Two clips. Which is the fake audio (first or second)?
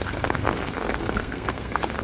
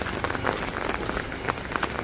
first